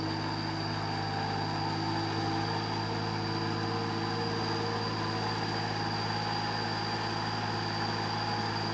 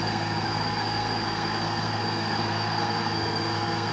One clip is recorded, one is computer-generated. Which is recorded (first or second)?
first